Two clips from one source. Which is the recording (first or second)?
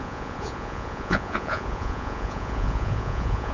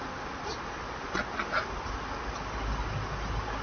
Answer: second